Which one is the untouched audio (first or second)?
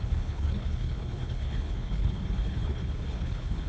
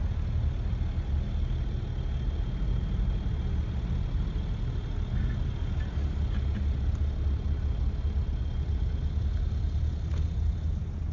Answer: second